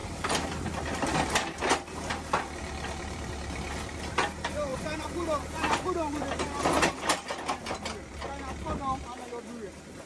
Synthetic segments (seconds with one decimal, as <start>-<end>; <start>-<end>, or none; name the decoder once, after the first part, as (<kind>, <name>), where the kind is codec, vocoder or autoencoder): 0.0-3.3 (vocoder, BigVGAN v2); 4.7-6.4